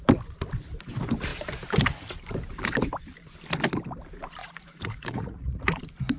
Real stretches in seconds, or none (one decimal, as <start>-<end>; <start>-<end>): 0.0-4.4; 5.8-6.2